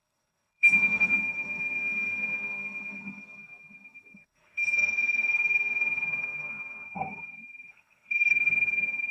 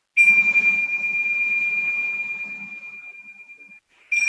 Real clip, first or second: second